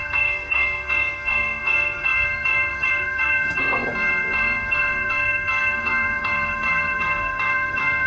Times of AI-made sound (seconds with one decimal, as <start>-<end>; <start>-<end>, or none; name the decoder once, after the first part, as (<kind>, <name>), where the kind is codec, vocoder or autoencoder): 0.0-8.1 (codec, SNAC)